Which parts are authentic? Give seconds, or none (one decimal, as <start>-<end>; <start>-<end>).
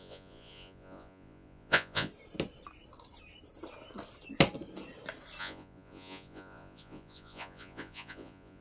2.1-5.4